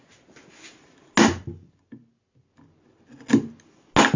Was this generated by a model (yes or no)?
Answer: no